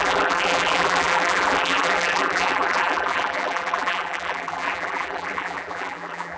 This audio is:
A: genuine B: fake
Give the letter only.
B